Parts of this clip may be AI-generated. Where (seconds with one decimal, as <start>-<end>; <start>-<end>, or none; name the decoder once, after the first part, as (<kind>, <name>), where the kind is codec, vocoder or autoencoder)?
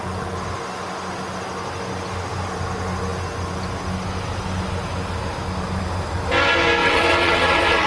6.8-7.9 (vocoder, WaveNeXt)